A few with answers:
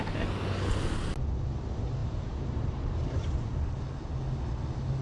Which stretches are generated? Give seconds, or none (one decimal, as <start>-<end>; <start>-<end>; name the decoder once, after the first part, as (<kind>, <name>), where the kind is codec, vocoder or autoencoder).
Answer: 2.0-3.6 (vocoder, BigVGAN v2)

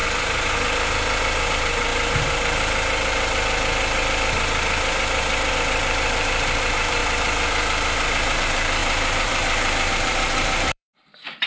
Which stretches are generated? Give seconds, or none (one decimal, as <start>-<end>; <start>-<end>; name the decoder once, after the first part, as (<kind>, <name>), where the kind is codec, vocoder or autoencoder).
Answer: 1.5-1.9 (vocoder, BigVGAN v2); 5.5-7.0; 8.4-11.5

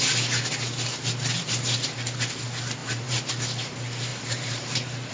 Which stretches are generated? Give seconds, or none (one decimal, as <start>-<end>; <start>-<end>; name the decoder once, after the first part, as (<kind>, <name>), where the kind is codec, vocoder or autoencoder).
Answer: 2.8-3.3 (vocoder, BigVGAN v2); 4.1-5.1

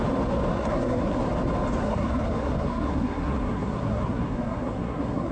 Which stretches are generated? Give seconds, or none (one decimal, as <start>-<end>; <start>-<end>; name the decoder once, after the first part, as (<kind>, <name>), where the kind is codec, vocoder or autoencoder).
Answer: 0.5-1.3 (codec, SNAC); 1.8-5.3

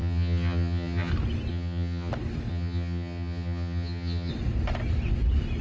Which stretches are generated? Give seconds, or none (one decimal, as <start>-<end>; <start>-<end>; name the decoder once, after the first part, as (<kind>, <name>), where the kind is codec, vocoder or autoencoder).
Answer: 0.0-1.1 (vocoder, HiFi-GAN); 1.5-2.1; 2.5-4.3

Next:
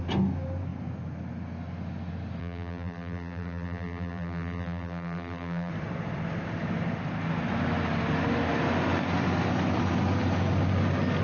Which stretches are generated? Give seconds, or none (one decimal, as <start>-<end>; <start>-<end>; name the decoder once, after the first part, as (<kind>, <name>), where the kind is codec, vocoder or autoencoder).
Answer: 2.4-5.7 (vocoder, BigVGAN v2)

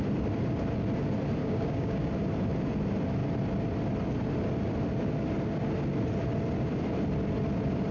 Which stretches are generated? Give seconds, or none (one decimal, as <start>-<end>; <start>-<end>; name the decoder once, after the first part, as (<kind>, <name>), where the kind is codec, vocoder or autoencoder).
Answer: 1.4-2.1 (codec, DAC)

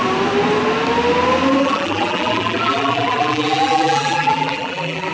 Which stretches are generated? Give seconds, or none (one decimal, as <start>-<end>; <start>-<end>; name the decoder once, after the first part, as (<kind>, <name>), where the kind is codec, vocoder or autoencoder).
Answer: 1.6-5.1 (vocoder, BigVGAN v2)